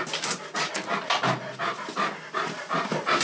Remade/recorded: recorded